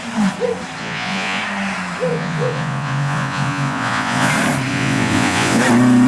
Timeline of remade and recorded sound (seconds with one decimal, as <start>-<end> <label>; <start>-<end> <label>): 0.0-0.8 recorded; 0.8-1.4 remade; 1.4-2.1 recorded; 2.1-4.3 remade; 4.3-4.7 recorded; 4.7-5.6 remade; 5.6-6.1 recorded